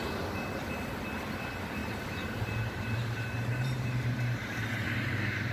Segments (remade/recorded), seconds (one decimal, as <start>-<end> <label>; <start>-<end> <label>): 0.0-1.8 recorded; 1.8-5.1 remade; 5.1-5.5 recorded